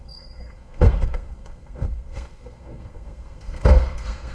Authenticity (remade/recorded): remade